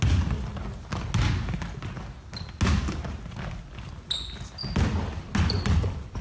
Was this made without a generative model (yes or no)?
yes